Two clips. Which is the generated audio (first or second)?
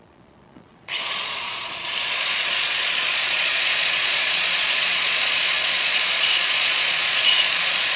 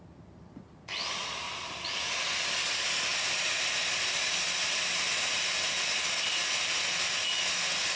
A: first